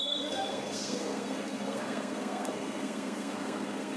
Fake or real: fake